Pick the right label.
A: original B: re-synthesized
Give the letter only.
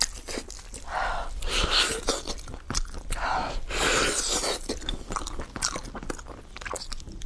A